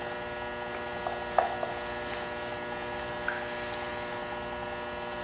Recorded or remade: recorded